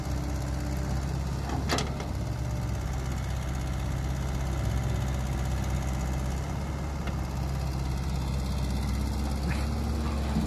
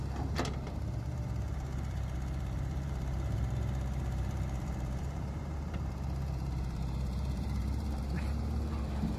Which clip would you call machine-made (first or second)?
second